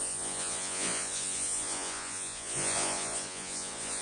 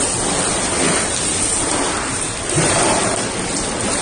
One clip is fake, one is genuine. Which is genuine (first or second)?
second